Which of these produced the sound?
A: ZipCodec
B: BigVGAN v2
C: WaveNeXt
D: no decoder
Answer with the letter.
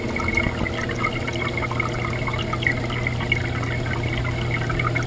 D